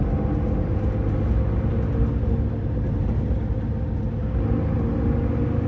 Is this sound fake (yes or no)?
no